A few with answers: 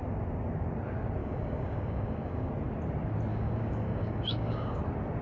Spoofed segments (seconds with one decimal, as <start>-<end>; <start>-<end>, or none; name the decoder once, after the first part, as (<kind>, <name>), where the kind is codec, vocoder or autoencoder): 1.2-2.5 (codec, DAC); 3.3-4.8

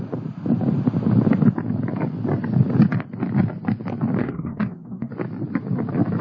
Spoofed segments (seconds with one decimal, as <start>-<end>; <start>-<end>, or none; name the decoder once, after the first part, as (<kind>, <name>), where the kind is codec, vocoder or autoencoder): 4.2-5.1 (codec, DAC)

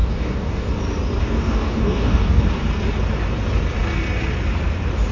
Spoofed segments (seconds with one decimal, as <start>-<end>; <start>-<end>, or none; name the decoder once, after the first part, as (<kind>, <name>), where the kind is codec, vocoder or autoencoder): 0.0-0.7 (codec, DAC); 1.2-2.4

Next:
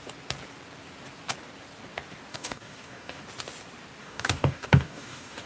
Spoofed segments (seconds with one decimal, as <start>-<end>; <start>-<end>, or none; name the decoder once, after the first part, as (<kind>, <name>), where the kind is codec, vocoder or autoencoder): 2.3-3.2 (codec, DAC); 4.0-5.5

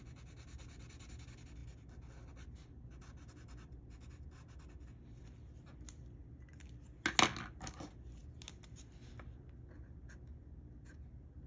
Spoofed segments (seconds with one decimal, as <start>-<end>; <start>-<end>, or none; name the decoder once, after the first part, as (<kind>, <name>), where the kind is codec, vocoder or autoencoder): none

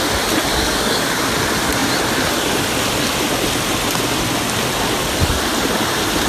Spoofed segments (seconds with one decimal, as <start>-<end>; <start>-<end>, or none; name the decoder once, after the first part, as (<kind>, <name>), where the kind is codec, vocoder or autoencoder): 0.5-1.2 (codec, DAC)

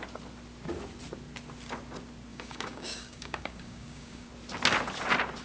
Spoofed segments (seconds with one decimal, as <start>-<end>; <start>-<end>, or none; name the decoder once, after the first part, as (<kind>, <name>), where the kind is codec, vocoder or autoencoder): 2.3-4.3 (codec, DAC)